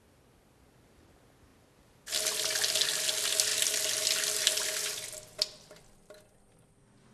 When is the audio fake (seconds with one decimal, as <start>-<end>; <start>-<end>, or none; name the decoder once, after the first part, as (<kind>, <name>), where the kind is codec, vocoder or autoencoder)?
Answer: none